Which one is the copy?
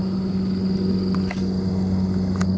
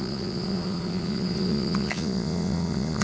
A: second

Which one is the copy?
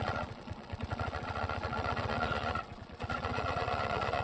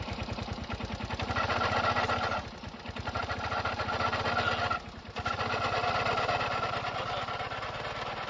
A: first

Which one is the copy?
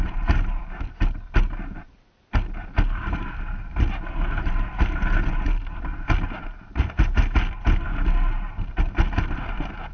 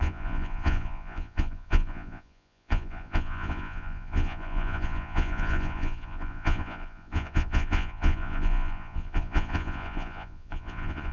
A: second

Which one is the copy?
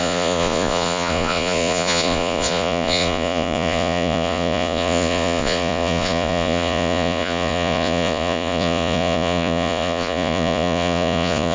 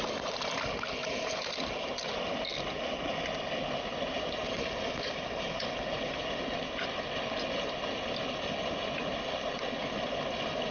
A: first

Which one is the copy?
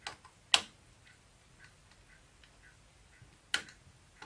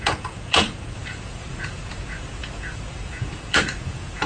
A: second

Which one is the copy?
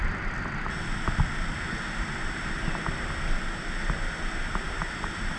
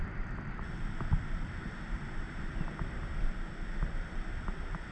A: second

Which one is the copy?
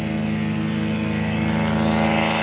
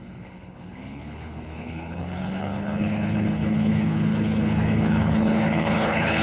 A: second